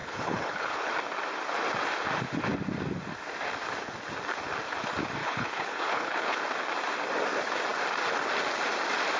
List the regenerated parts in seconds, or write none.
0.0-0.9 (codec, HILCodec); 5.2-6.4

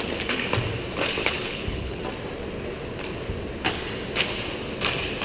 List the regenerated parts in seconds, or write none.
1.2-2.0 (codec, HILCodec)

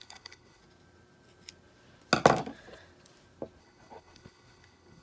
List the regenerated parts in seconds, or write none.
0.0-0.6 (codec, HILCodec); 3.6-5.0

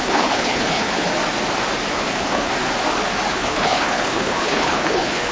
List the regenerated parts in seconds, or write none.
0.0-1.1 (codec, HILCodec); 1.9-2.5; 3.3-5.3

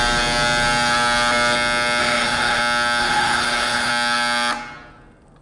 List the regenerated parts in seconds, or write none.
2.0-2.6 (codec, HILCodec); 3.0-3.9

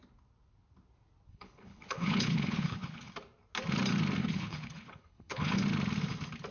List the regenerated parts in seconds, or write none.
1.3-3.1 (codec, HILCodec); 4.2-5.6

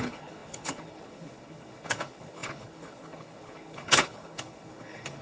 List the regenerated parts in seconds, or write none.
0.0-5.2 (codec, HILCodec)

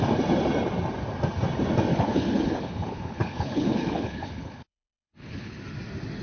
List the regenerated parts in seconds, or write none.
1.9-5.6 (codec, HILCodec)